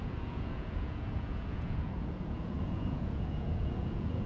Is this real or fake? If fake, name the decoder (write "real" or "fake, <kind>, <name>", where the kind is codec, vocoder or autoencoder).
fake, vocoder, Vocos